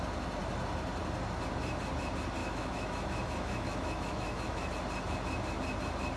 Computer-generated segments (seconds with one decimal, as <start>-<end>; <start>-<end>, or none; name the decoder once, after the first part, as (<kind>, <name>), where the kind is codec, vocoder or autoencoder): 2.4-4.7 (autoencoder, DAC-VAE)